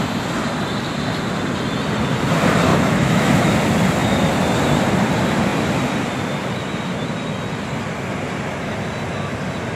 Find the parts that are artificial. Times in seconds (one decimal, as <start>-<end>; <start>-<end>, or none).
2.7-3.5